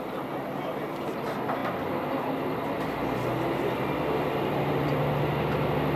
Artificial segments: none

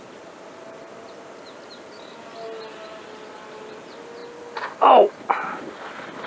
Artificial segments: none

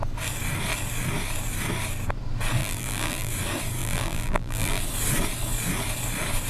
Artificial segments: 2.6-3.3 (vocoder, BigVGAN v2); 3.8-4.8

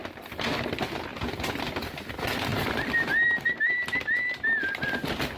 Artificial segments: none

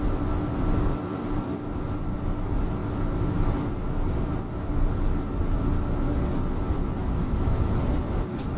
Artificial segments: 7.0-7.7 (autoencoder, DAC-VAE)

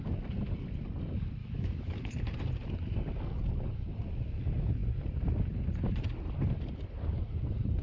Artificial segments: 1.4-2.1 (autoencoder, DAC-VAE)